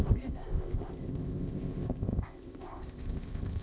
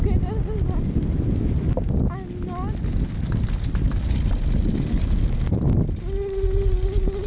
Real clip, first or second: second